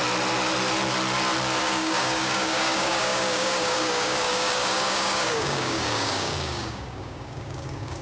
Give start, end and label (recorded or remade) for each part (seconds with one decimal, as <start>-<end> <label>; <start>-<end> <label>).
0.0-1.6 recorded; 1.6-8.0 remade